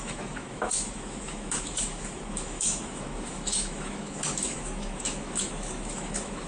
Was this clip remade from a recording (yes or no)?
yes